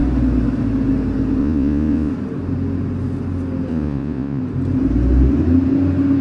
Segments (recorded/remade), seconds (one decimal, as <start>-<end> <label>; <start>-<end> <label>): 0.0-1.4 recorded; 1.4-2.1 remade; 2.1-3.7 recorded; 3.7-4.4 remade; 4.4-6.2 recorded